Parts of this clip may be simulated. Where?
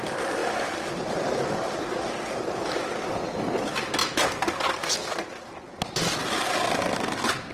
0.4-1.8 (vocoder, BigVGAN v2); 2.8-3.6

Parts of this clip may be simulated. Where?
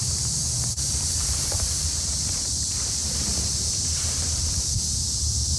0.0-5.6 (vocoder, BigVGAN v2)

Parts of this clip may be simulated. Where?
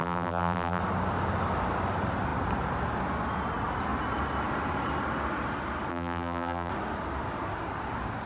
0.0-0.8 (vocoder, BigVGAN v2); 5.9-6.7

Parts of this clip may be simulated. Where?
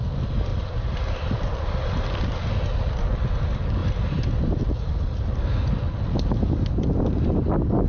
0.5-1.5 (vocoder, BigVGAN v2); 3.8-4.6